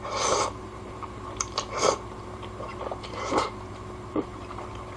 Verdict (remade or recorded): remade